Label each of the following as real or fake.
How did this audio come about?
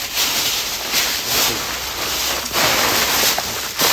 real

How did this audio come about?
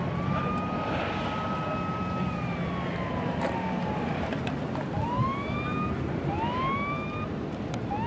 real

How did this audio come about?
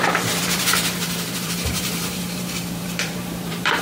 fake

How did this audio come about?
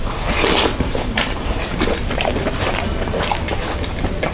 fake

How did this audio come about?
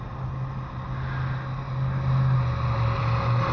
real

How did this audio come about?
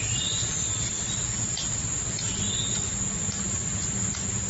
real